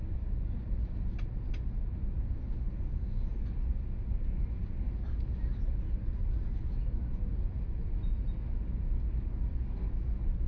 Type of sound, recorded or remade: recorded